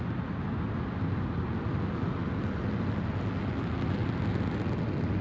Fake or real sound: real